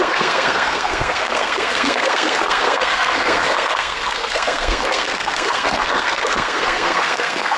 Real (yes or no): no